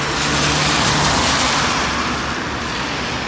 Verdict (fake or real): real